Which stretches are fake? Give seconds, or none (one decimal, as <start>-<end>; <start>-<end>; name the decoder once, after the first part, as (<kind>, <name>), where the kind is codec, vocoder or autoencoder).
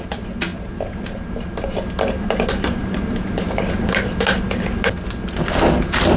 0.5-4.2 (vocoder, BigVGAN v2)